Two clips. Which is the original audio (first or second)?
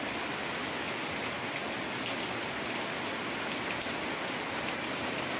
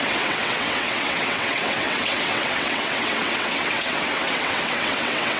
first